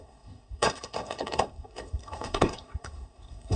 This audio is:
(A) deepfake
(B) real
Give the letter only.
A